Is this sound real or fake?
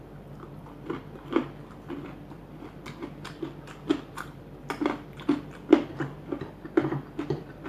fake